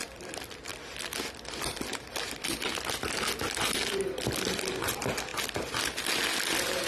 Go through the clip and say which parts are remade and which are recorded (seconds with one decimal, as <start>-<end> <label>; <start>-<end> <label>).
0.0-6.9 recorded